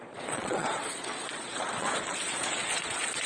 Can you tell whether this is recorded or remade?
remade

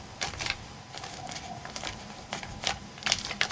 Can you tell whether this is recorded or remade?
remade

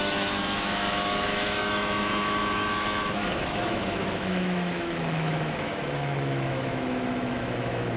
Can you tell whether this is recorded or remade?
remade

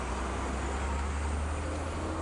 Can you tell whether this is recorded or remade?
recorded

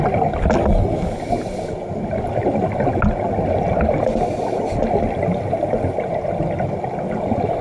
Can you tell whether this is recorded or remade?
recorded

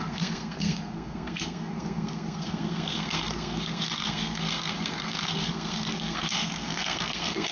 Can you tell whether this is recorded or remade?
remade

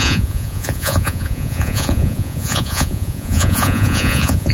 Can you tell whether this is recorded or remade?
remade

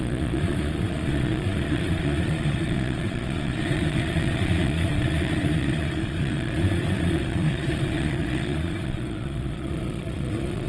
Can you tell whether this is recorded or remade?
remade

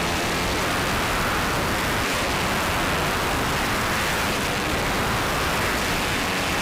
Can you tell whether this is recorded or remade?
recorded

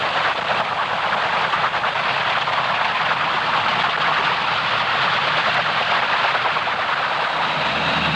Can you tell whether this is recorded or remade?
recorded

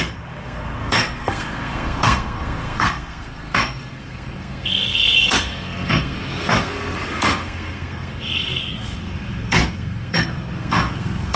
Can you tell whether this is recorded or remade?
remade